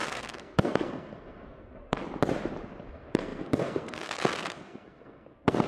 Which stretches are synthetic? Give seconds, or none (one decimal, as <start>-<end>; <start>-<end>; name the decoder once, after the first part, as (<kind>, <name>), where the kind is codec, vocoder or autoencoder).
0.0-2.0 (codec, SNAC); 2.9-5.7